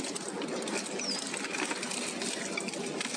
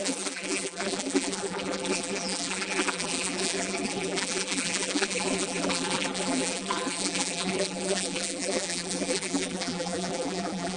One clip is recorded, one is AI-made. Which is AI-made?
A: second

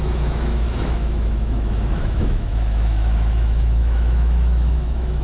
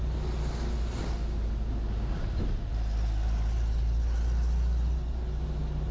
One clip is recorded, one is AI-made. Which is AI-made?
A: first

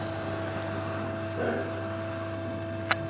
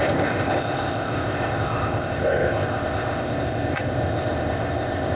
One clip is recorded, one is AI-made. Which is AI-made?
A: second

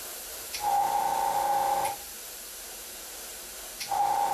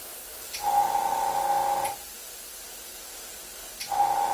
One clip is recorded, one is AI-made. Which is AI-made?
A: first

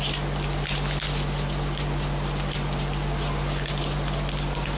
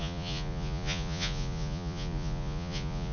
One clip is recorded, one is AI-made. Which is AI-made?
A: second